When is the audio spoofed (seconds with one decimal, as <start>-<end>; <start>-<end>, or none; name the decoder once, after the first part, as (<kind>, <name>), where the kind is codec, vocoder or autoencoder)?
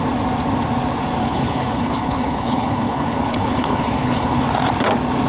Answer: 1.2-4.4 (codec, HILCodec)